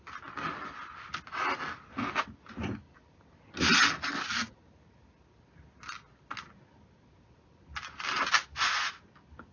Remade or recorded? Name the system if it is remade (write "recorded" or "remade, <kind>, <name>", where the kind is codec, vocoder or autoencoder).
recorded